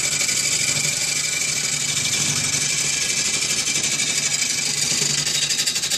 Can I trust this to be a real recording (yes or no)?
yes